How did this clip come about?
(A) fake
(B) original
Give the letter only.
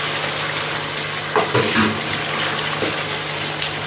B